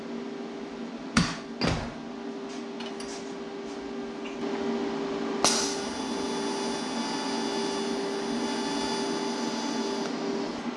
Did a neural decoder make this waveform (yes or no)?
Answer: no